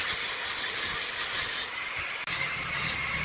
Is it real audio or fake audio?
real